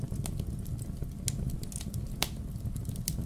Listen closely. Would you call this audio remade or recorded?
recorded